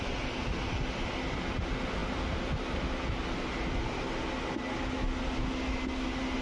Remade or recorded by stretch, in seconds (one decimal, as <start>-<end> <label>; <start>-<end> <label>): 0.0-6.4 recorded